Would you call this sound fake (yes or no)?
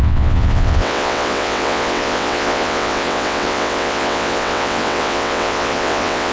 yes